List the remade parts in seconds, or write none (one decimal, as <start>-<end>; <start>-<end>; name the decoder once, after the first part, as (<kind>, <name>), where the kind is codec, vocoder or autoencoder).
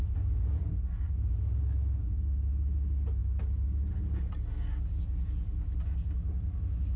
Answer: none